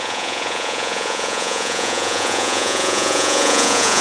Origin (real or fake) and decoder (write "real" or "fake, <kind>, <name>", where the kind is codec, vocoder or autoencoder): fake, vocoder, Vocos